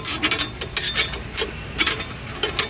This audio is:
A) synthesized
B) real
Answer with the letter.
B